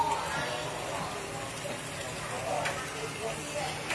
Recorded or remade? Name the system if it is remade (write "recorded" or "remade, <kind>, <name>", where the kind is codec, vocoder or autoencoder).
recorded